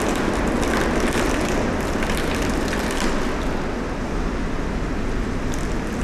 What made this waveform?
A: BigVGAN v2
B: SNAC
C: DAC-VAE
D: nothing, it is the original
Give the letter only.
D